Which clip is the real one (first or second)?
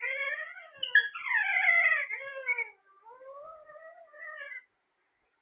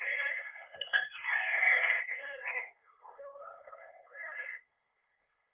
first